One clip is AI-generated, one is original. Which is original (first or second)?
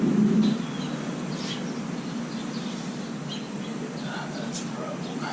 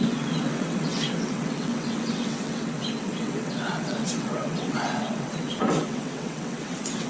first